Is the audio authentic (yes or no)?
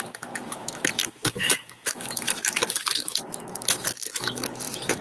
no